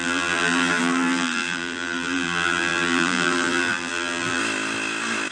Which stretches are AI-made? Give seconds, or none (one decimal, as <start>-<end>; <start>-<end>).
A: 0.0-4.4